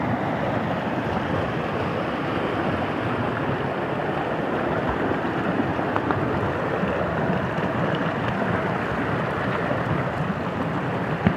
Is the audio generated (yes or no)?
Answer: no